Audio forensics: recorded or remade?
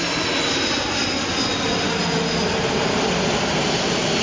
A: recorded